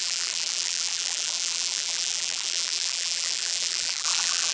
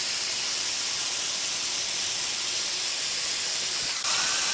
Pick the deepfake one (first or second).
first